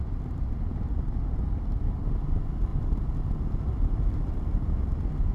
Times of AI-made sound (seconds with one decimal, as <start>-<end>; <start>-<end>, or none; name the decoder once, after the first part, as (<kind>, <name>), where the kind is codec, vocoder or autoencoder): 2.7-5.3 (vocoder, BigVGAN v2)